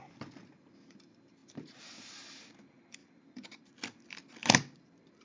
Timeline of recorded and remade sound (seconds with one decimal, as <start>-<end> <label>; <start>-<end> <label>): 0.0-3.0 recorded; 3.0-3.6 remade; 3.6-5.2 recorded